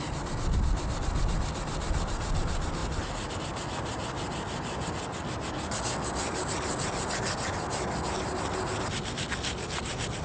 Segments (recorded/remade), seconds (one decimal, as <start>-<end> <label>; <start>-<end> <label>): 0.0-10.2 recorded